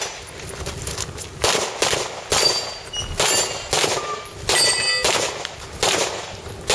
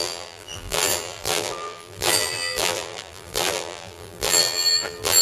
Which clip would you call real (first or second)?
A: first